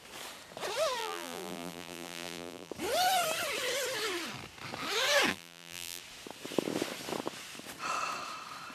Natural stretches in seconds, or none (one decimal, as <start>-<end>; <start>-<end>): 0.0-1.0; 2.7-5.3; 6.0-8.7